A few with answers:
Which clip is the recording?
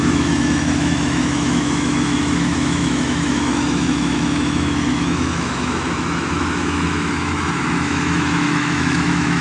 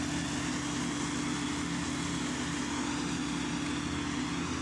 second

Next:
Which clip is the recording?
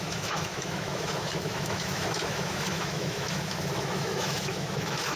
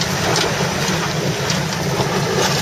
second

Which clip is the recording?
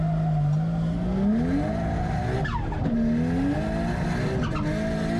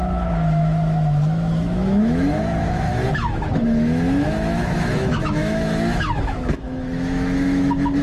first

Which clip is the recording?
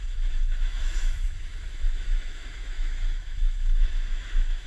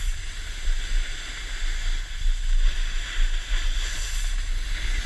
second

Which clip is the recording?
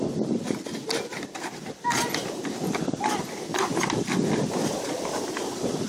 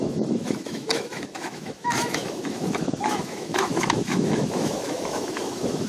first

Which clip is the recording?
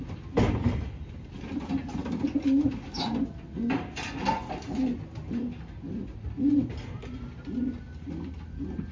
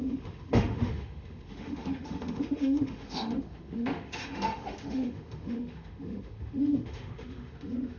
first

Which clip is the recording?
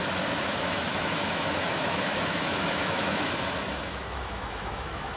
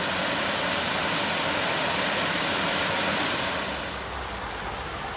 second